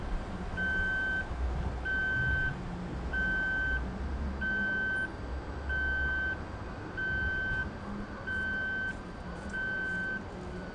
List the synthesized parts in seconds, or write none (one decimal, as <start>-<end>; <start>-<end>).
none